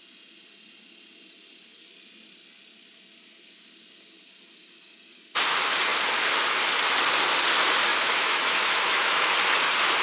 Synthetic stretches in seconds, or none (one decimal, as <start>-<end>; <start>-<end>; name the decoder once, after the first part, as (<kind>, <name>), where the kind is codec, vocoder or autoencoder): 7.9-9.3 (autoencoder, DAC-VAE)